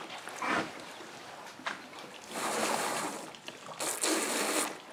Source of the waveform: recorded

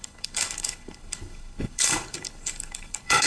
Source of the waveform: remade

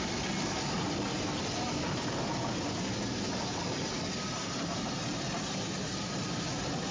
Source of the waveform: recorded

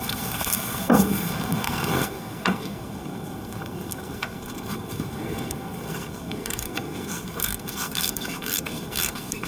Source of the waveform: remade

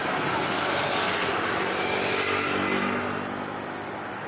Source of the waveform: recorded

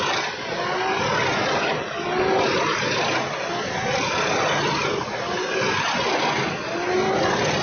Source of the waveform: recorded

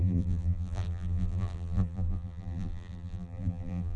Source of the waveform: remade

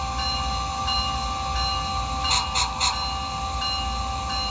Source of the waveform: recorded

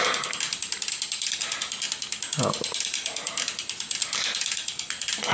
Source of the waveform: recorded